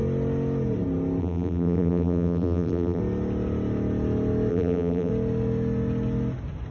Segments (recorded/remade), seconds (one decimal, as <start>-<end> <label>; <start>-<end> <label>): 0.0-1.2 recorded; 1.2-3.0 remade; 3.0-4.5 recorded; 4.5-5.1 remade; 5.1-6.7 recorded